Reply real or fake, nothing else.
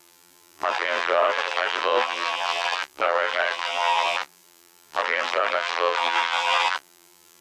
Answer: fake